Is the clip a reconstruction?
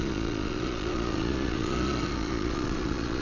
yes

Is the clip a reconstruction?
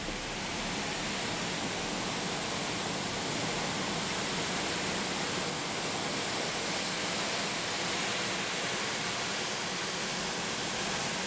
no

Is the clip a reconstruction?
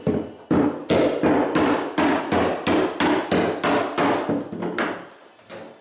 no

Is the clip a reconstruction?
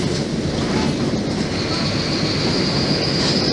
no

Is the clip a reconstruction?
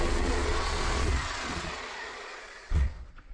yes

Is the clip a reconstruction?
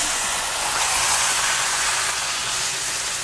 yes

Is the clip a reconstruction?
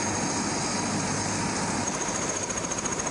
no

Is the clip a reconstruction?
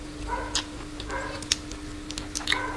no